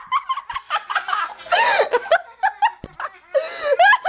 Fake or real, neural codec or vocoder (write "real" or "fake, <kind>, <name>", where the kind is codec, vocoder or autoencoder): real